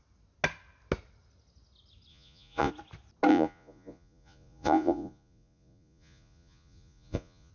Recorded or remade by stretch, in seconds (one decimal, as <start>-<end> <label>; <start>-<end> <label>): 0.0-2.1 recorded; 2.1-2.7 remade; 2.7-3.3 recorded; 3.3-7.5 remade